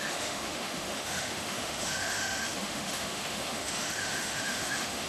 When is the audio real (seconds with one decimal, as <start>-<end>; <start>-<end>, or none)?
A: none